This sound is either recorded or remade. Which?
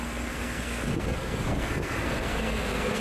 remade